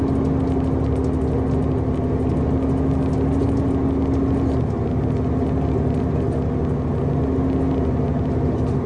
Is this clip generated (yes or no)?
no